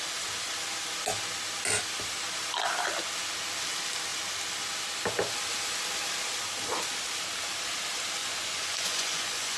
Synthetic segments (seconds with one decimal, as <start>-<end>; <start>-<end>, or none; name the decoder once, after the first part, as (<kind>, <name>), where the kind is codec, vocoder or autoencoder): 8.2-9.6 (vocoder, Vocos)